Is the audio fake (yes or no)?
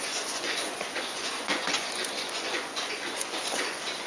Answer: yes